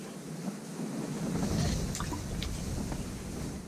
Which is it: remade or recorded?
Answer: recorded